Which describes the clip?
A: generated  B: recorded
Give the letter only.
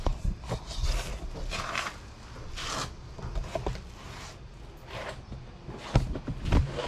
B